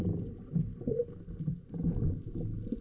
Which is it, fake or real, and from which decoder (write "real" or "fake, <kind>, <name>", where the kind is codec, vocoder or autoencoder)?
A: real